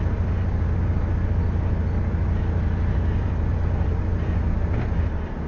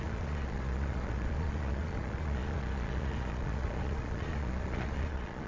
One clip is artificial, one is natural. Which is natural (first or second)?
first